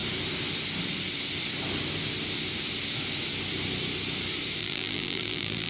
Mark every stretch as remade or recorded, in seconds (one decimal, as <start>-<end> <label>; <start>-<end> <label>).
0.0-4.6 recorded; 4.6-5.7 remade